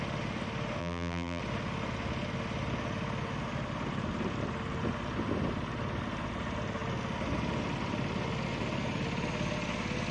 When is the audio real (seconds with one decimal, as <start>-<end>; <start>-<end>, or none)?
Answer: 0.0-0.8; 1.4-10.1